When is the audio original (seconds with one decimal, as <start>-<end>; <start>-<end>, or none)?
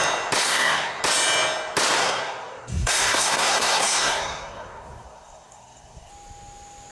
0.0-0.4; 1.0-2.0; 6.1-6.9